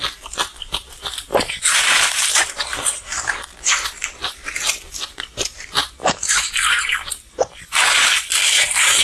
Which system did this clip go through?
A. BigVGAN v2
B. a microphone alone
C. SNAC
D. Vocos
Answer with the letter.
A